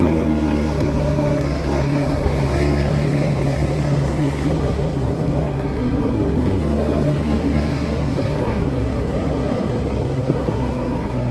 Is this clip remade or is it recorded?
remade